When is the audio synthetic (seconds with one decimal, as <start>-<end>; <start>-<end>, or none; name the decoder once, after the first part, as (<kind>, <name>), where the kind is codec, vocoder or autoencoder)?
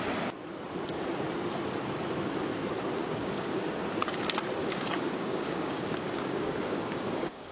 3.0-3.7 (codec, DAC); 4.6-7.5